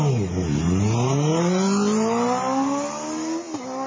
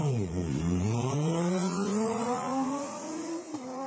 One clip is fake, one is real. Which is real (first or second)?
first